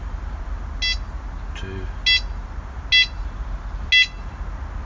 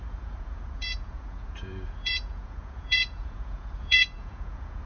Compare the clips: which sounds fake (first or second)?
second